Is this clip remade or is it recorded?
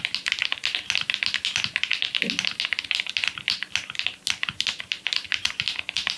recorded